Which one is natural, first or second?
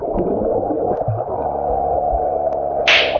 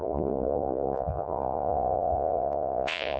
first